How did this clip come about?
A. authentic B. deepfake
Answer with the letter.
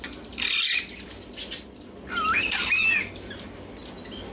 A